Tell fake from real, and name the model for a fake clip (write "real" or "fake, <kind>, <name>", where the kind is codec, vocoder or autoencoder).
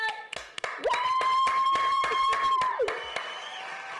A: fake, vocoder, BigVGAN v2